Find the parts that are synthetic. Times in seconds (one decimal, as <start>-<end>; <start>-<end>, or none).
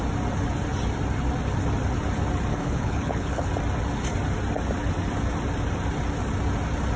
2.5-3.5